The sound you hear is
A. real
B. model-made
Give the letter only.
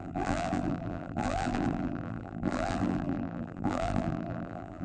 B